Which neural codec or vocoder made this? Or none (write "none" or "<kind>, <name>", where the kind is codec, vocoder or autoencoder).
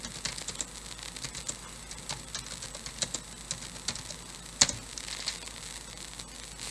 none